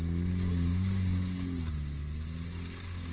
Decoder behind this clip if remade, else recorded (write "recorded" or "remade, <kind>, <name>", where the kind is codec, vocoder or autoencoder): recorded